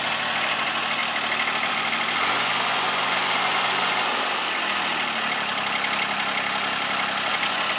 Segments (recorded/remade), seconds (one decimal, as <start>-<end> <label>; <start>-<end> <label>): 0.0-1.0 remade; 1.0-1.7 recorded; 1.7-4.1 remade; 4.1-7.3 recorded; 7.3-7.8 remade